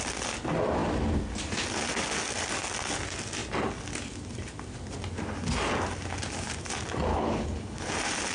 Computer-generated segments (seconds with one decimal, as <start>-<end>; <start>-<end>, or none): 7.1-7.9